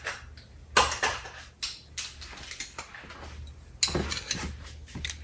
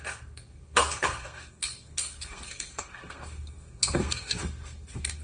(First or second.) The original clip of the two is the first